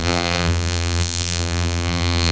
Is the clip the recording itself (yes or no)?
no